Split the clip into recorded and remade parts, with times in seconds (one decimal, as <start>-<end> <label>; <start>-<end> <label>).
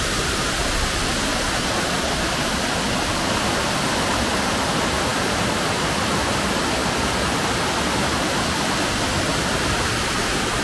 0.0-10.6 recorded